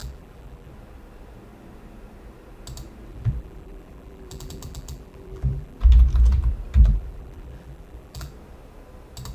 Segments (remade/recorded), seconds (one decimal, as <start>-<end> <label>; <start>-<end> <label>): 0.0-0.7 remade; 0.7-3.1 recorded; 3.1-5.8 remade; 5.8-6.8 recorded; 6.8-8.3 remade; 8.3-9.3 recorded